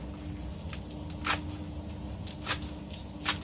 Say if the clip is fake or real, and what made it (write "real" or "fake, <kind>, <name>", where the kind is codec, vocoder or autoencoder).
real